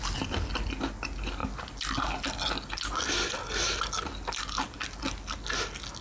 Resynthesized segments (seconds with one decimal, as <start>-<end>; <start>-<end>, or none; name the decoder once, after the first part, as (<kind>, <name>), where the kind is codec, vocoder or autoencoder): none